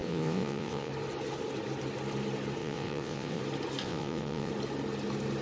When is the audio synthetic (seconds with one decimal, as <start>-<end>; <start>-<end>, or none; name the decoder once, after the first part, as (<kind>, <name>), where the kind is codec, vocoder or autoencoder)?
0.0-0.9 (vocoder, WaveNeXt); 2.6-3.4; 3.8-4.5